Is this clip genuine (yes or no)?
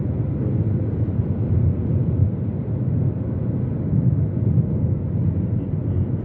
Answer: yes